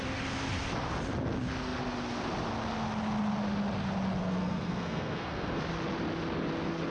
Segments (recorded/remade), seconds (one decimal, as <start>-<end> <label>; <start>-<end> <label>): 0.0-4.2 recorded; 4.2-5.6 remade; 5.6-6.9 recorded